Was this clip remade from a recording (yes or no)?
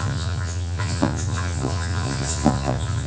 yes